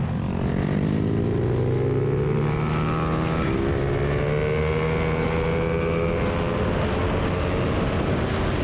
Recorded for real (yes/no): yes